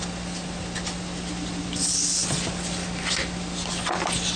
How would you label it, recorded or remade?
recorded